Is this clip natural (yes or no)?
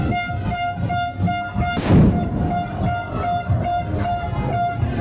yes